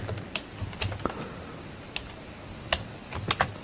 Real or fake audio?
real